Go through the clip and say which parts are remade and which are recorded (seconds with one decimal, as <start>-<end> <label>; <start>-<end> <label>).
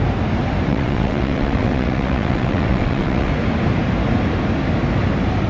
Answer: 0.0-0.7 recorded; 0.7-3.3 remade; 3.3-5.5 recorded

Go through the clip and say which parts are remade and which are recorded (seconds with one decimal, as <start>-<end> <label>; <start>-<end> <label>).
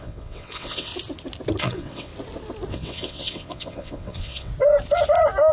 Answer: 0.0-0.9 remade; 0.9-1.6 recorded; 1.6-2.1 remade; 2.1-2.7 recorded; 2.7-4.5 remade; 4.5-5.5 recorded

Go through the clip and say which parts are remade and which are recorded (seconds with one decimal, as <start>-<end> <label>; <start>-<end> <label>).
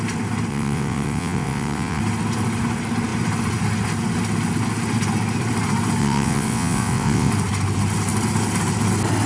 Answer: 0.0-0.5 recorded; 0.5-2.0 remade; 2.0-6.0 recorded; 6.0-7.3 remade; 7.3-9.3 recorded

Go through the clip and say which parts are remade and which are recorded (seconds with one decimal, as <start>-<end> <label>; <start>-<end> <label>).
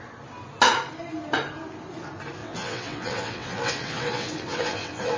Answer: 0.0-2.4 recorded; 2.4-5.2 remade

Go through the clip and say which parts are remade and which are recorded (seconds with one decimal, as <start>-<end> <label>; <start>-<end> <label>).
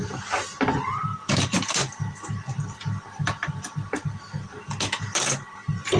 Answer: 0.0-6.0 recorded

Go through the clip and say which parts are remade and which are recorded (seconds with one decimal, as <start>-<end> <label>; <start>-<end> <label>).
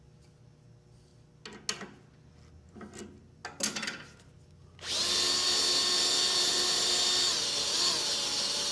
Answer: 0.0-8.7 recorded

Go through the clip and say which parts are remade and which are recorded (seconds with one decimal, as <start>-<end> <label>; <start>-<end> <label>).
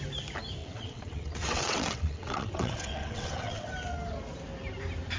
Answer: 0.0-0.6 recorded; 0.6-3.7 remade; 3.7-5.2 recorded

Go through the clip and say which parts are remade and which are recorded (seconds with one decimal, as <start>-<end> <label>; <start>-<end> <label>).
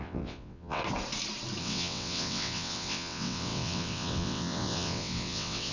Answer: 0.0-0.8 remade; 0.8-1.6 recorded; 1.6-5.7 remade